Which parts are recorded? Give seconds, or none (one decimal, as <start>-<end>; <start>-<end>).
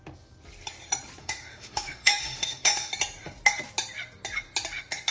0.0-1.2; 2.9-5.1